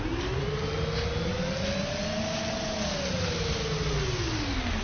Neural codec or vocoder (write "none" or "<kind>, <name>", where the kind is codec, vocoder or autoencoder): none